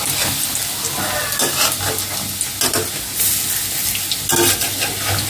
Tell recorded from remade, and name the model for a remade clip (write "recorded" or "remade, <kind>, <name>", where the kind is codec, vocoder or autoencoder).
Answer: recorded